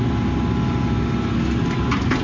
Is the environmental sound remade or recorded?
recorded